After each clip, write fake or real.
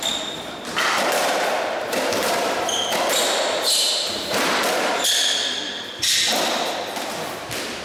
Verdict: fake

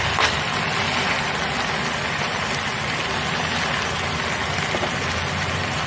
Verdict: real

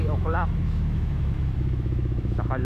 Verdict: fake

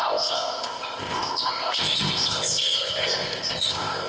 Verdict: fake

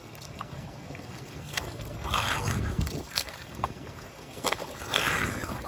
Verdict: fake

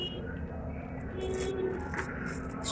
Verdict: fake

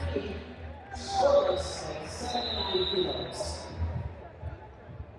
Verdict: real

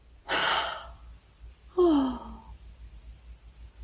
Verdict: real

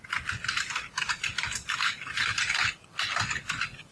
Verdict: real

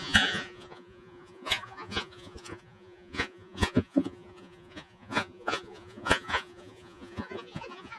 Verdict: fake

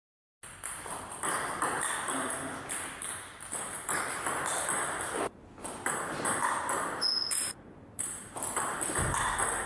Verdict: real